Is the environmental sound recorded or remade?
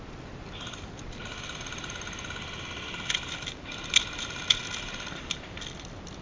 recorded